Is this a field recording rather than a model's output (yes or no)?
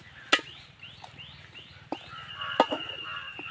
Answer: yes